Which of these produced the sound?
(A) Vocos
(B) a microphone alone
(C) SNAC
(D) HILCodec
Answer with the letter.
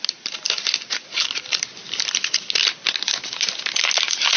B